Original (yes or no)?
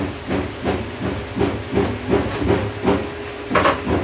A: yes